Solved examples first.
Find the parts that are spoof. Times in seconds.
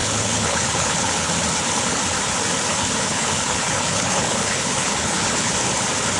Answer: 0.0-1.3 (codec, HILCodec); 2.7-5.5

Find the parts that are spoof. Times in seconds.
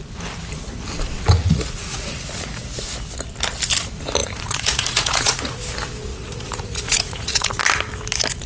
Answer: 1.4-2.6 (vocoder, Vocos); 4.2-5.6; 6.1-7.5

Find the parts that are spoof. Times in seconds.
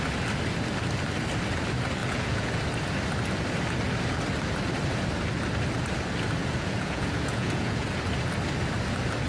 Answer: 2.0-2.6 (vocoder, Vocos); 6.4-8.0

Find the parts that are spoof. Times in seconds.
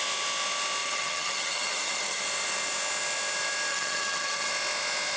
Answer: 0.8-2.2 (vocoder, HiFi-GAN); 3.7-4.5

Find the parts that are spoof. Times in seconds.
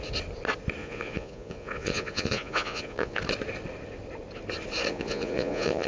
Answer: 0.8-3.2 (vocoder, Vocos); 4.9-5.9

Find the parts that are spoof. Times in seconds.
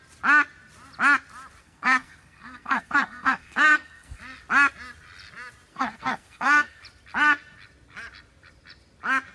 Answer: 1.6-4.2 (codec, SNAC); 5.7-6.8